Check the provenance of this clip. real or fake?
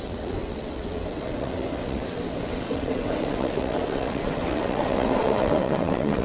fake